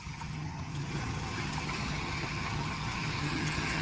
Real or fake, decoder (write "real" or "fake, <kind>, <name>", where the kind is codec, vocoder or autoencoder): fake, vocoder, HiFi-GAN